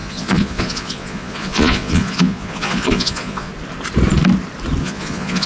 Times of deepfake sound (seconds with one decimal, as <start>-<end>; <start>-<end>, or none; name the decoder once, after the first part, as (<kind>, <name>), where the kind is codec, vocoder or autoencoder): 0.0-3.5 (vocoder, Vocos); 4.8-5.5